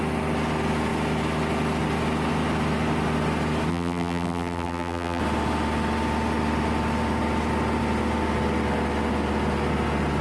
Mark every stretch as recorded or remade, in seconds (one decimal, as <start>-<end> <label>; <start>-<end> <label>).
0.0-3.7 recorded; 3.7-5.2 remade; 5.2-10.2 recorded